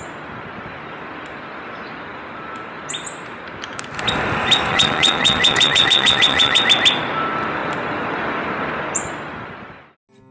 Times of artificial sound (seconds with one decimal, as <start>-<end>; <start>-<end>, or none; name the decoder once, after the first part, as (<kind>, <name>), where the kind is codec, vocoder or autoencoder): 4.7-6.6 (vocoder, WaveNeXt)